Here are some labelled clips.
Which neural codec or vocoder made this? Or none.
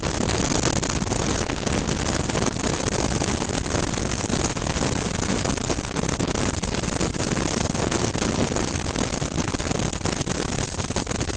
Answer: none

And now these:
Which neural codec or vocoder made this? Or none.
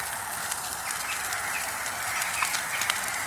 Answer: none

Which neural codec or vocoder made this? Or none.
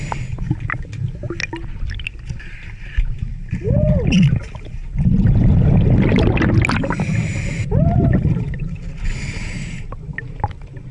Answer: none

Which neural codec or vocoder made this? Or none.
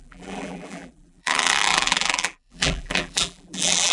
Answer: vocoder, BigVGAN v2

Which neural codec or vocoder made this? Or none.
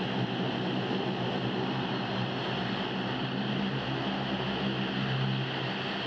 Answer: none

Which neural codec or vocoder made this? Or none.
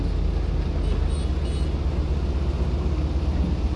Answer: none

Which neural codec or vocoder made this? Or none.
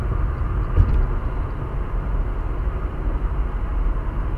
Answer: none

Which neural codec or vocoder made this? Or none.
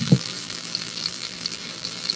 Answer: vocoder, BigVGAN v2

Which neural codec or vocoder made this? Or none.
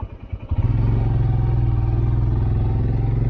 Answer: none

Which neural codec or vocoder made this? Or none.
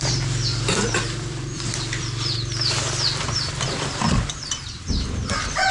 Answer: vocoder, BigVGAN v2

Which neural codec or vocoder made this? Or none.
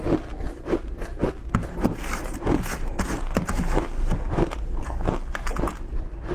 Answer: none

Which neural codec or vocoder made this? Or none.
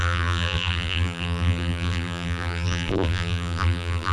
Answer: vocoder, BigVGAN v2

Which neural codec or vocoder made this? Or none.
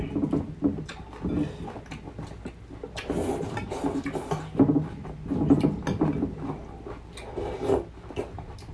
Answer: none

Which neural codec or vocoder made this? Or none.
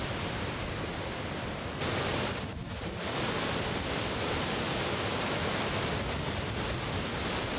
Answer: none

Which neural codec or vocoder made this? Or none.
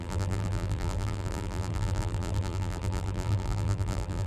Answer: vocoder, BigVGAN v2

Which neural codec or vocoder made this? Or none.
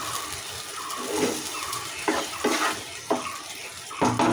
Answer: none